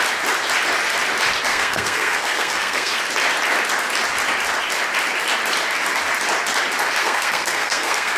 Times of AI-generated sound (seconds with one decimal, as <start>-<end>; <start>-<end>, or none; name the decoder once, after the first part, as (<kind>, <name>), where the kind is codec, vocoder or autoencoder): 1.5-3.0 (codec, SNAC); 7.0-8.2